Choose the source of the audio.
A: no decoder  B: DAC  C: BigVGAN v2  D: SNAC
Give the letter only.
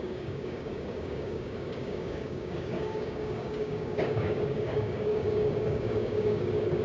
B